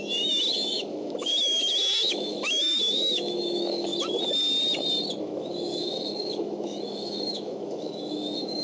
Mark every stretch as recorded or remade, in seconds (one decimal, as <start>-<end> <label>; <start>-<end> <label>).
0.0-3.9 remade; 3.9-5.2 recorded; 5.2-8.6 remade